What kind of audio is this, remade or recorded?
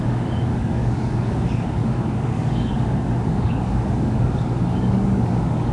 remade